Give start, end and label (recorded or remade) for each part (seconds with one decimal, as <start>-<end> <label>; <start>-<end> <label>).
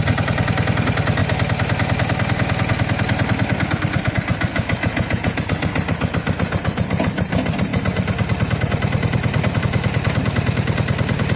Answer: 0.0-4.5 recorded; 4.5-5.4 remade; 5.4-11.4 recorded